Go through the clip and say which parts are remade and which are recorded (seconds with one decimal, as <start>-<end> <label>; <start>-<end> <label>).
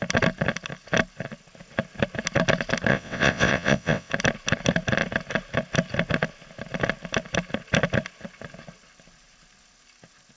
0.0-2.9 recorded; 2.9-4.1 remade; 4.1-10.4 recorded